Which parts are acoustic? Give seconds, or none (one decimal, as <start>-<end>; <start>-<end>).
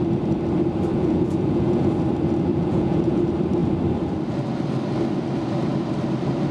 0.0-0.9; 1.9-2.5; 3.2-6.5